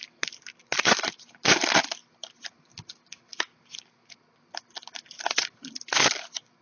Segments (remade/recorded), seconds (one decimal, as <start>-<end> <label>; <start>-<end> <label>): 0.0-6.6 recorded